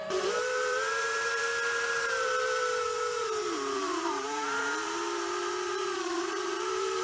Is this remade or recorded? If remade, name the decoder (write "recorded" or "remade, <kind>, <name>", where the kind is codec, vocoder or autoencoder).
remade, vocoder, BigVGAN v2